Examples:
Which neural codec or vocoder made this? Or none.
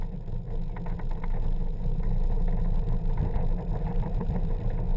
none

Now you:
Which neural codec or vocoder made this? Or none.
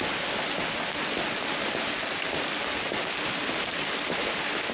none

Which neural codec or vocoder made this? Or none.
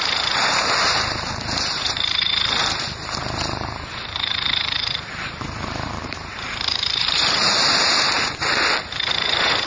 vocoder, BigVGAN v2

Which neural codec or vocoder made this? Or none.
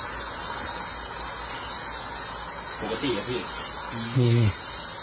none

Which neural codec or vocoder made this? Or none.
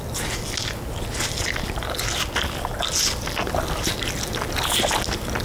none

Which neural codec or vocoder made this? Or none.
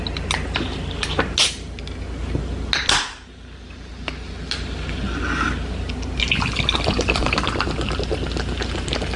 none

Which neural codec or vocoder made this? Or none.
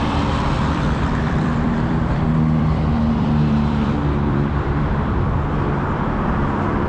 vocoder, BigVGAN v2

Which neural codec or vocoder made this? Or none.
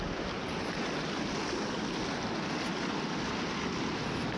none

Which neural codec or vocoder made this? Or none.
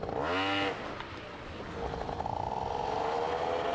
none